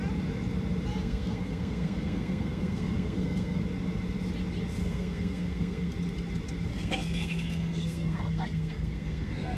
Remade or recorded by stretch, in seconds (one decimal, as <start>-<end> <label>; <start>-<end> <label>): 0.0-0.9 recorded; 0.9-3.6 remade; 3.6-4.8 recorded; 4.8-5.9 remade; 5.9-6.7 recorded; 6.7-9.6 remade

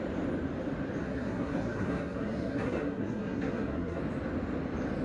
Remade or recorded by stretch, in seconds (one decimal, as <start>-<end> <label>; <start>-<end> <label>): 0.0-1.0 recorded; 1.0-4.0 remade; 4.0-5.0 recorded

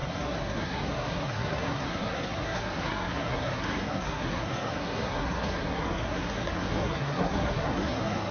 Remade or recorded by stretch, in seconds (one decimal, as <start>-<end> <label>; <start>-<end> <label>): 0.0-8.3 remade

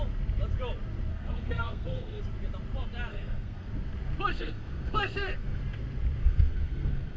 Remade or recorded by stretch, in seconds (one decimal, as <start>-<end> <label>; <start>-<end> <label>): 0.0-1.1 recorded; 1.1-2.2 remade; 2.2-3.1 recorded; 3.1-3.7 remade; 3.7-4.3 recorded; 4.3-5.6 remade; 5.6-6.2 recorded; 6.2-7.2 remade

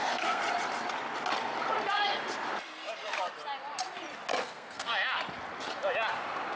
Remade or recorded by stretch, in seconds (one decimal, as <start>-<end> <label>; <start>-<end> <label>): 0.0-0.4 remade; 0.4-4.4 recorded; 4.4-4.9 remade; 4.9-6.6 recorded